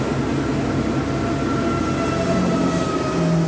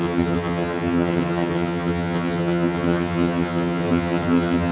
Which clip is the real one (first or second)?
first